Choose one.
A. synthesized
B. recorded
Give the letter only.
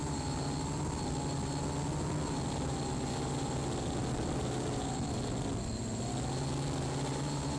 B